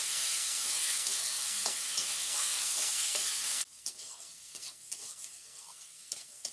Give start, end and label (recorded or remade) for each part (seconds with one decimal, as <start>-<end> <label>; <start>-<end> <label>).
0.0-6.5 remade